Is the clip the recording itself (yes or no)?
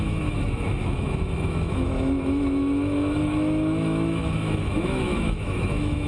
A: no